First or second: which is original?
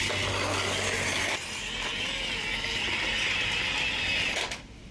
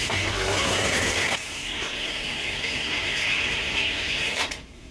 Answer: first